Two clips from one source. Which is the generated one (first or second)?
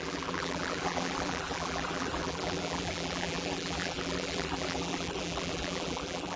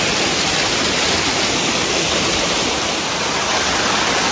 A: first